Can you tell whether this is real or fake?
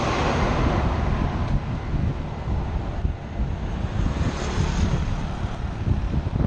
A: real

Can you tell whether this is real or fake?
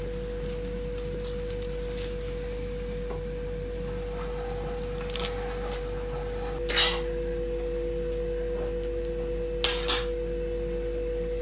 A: real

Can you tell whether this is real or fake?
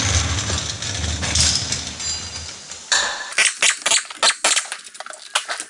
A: real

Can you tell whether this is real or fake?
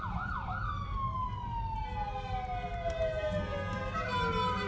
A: real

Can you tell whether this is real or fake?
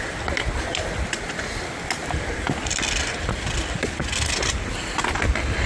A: real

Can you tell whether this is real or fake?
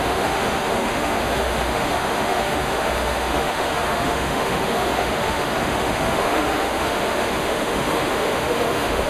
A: fake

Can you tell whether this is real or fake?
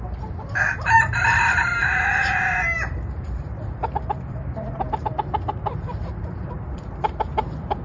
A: fake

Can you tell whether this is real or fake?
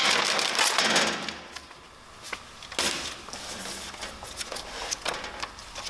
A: real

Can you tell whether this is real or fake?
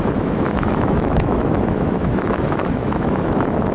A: fake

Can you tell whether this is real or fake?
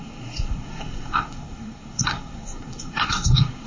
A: fake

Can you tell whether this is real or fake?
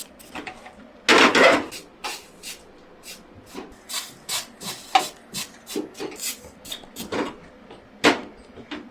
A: real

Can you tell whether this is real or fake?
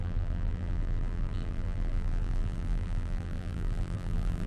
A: fake